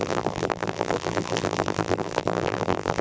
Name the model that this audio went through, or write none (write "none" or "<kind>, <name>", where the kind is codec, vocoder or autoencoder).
vocoder, BigVGAN v2